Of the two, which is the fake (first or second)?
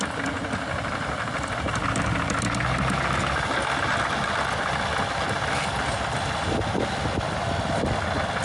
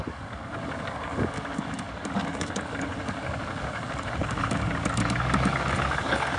second